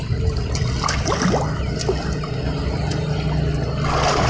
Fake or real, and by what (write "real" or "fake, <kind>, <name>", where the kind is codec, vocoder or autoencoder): real